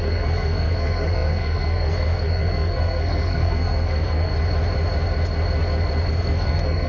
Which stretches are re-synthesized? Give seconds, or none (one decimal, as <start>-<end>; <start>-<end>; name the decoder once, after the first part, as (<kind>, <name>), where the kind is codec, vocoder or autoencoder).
0.0-4.3 (codec, SNAC); 6.1-6.9